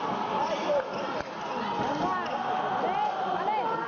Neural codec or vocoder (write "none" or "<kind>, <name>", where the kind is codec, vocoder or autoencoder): none